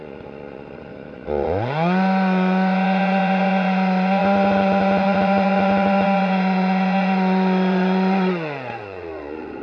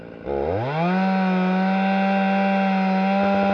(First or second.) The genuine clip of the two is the second